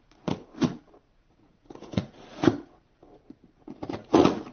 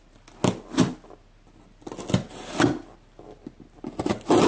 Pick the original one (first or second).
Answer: second